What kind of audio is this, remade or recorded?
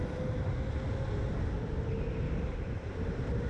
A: recorded